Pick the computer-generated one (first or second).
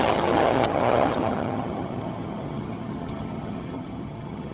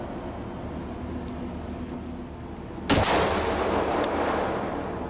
first